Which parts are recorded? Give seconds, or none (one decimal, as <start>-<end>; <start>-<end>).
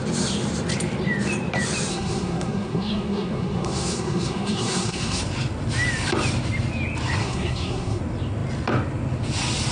0.0-1.9; 5.2-7.2; 8.0-9.7